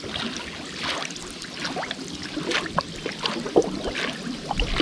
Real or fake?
real